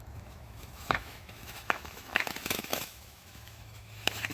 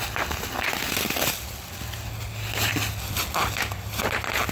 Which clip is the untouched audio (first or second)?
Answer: second